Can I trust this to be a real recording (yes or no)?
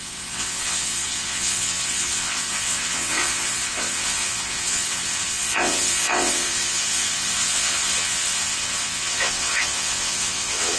no